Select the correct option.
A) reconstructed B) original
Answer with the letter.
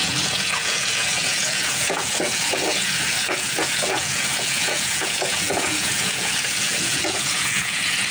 A